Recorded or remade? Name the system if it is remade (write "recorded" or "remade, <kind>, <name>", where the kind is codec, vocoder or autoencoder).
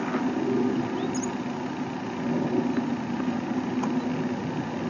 recorded